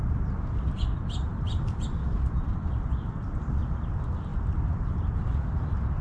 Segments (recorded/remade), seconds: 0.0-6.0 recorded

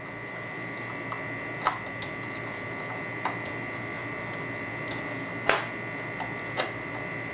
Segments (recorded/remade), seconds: 0.0-7.3 recorded

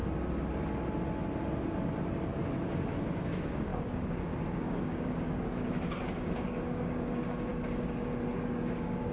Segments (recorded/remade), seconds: 0.0-3.1 recorded; 3.1-9.1 remade

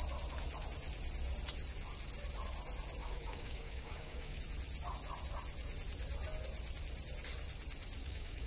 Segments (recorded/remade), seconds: 0.0-3.0 recorded; 3.0-4.4 remade; 4.4-8.0 recorded; 8.0-8.5 remade

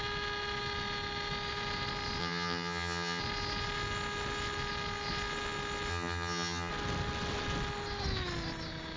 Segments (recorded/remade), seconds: 0.0-2.2 recorded; 2.2-3.2 remade; 3.2-5.9 recorded; 5.9-6.7 remade; 6.7-9.0 recorded

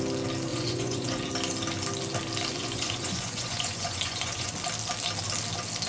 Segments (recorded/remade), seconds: 0.0-0.5 recorded; 0.5-1.3 remade; 1.3-2.5 recorded; 2.5-4.5 remade; 4.5-5.9 recorded

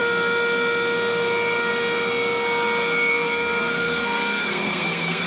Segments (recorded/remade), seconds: 0.0-3.1 recorded; 3.1-5.3 remade

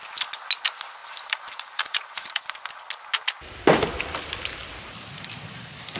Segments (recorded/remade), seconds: 0.0-1.0 recorded; 1.0-2.4 remade; 2.4-6.0 recorded